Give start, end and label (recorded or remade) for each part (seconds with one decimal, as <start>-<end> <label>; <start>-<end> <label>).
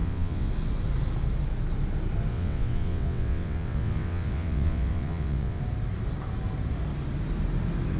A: 0.0-0.5 remade; 0.5-2.3 recorded; 2.3-5.6 remade; 5.6-8.0 recorded